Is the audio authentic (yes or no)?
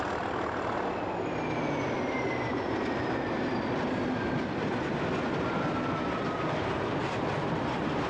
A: yes